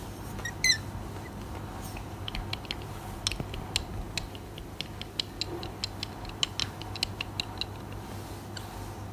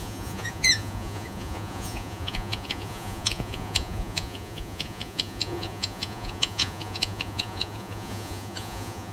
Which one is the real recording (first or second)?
first